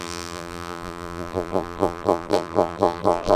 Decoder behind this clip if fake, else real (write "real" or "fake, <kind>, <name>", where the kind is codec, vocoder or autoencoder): fake, vocoder, BigVGAN v2